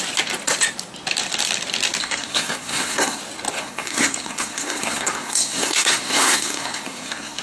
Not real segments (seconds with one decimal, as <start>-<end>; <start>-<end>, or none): 2.0-3.2; 3.6-7.4